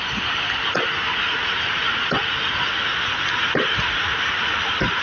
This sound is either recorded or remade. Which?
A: recorded